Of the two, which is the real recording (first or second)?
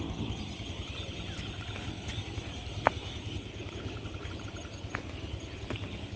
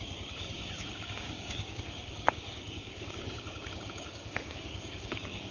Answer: first